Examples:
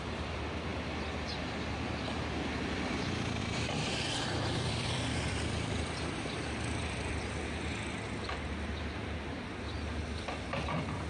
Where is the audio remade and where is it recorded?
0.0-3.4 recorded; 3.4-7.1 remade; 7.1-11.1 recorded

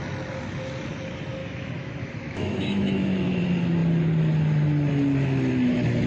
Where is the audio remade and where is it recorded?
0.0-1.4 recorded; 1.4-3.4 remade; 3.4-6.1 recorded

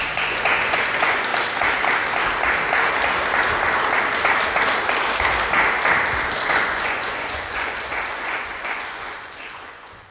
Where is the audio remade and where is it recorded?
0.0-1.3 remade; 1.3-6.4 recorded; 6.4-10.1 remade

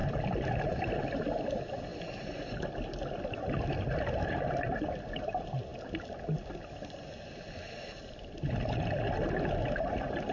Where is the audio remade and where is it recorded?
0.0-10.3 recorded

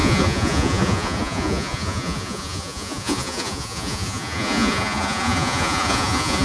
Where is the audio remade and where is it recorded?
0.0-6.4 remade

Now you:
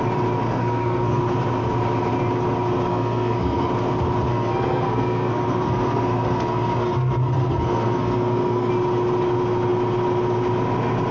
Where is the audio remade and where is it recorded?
0.0-0.6 recorded; 0.6-1.2 remade; 1.2-2.9 recorded; 2.9-3.7 remade; 3.7-4.3 recorded; 4.3-8.7 remade; 8.7-11.1 recorded